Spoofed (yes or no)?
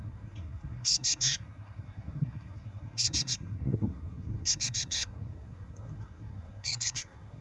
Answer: yes